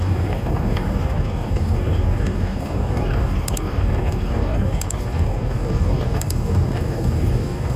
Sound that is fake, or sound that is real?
fake